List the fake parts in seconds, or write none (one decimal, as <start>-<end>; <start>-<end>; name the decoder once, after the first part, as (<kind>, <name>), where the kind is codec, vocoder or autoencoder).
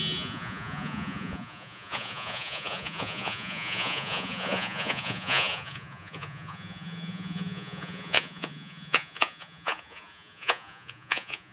0.0-11.5 (vocoder, Vocos)